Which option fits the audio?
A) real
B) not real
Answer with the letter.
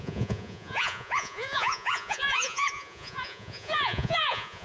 B